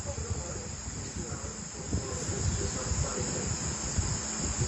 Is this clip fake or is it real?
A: real